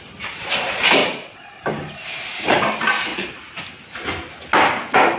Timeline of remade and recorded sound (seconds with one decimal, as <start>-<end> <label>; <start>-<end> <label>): 0.0-1.0 recorded; 1.0-1.7 remade; 1.7-3.1 recorded; 3.1-3.6 remade; 3.6-5.2 recorded